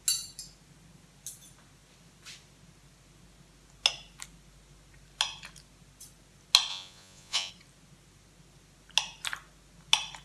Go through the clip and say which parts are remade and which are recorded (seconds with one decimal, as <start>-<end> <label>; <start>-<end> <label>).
0.0-6.7 recorded; 6.7-7.5 remade; 7.5-10.2 recorded